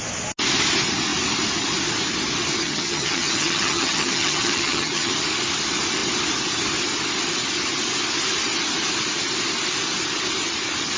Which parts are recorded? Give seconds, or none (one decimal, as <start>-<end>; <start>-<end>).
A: 0.0-2.6; 5.1-11.0